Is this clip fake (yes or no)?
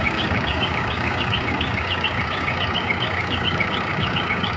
yes